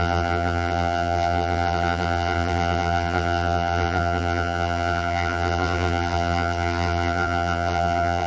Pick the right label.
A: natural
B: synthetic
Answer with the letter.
B